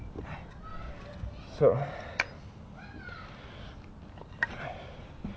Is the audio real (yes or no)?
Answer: yes